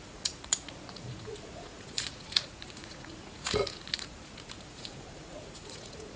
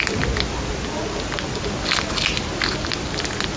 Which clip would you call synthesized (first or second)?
first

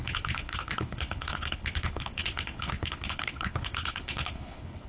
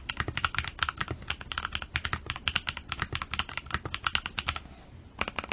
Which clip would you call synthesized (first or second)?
first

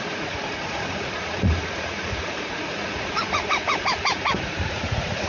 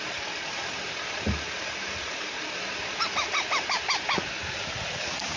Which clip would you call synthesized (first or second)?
first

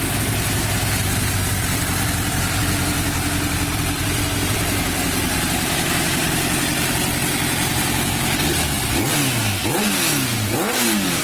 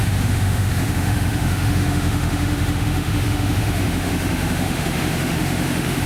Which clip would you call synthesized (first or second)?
second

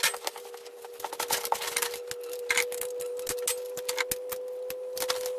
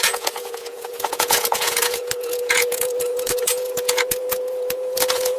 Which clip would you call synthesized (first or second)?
second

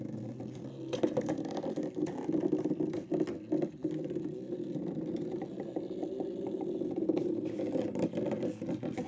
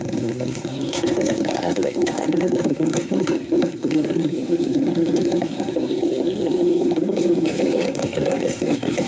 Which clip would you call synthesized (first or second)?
second